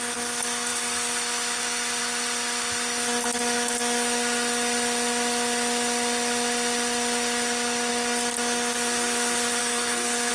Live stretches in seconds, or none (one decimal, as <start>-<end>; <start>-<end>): 0.0-9.6